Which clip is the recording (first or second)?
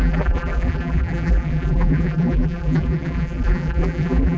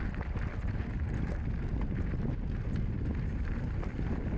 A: second